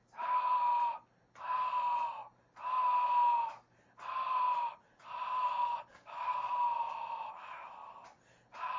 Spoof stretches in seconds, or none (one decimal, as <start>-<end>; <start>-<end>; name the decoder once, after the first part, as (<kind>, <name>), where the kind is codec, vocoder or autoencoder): 5.9-6.5 (codec, DAC)